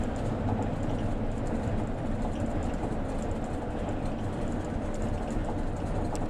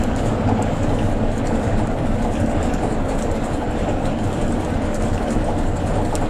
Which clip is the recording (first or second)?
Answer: first